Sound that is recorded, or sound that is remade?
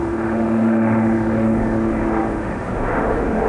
remade